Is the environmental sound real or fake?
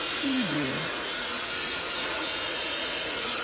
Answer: fake